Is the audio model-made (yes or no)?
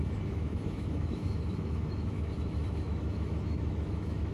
yes